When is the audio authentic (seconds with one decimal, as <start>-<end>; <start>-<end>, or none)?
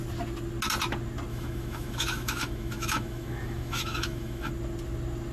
0.0-1.3; 4.5-5.3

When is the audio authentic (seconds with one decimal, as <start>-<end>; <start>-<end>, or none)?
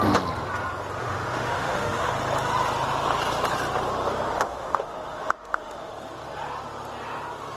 0.0-1.0; 2.1-4.3; 5.9-7.6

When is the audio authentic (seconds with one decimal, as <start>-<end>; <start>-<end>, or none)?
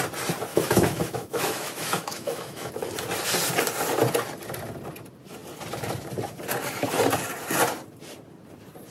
0.0-0.5; 2.7-8.9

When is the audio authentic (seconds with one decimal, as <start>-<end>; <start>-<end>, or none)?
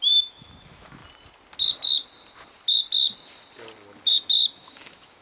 1.0-4.1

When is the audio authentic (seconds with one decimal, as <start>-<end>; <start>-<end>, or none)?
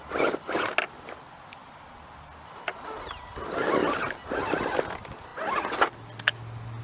0.0-6.8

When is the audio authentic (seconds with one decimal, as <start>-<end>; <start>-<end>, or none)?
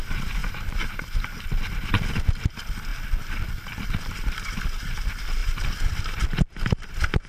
0.0-7.3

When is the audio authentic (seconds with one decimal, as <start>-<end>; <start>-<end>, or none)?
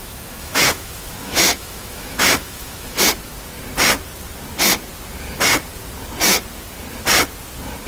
3.0-7.9